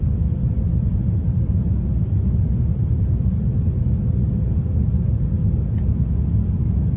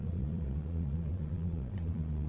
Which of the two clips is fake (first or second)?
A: second